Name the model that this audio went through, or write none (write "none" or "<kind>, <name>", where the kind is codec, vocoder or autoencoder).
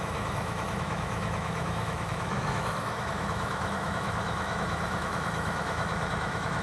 autoencoder, DAC-VAE